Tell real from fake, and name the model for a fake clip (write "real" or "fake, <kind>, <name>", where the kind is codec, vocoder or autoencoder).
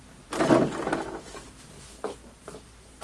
real